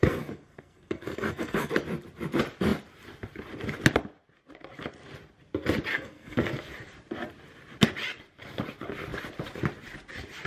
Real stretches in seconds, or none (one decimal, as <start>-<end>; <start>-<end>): 1.7-5.9; 6.5-10.5